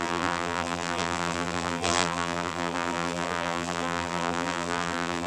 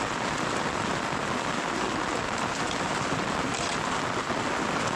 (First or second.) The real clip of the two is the second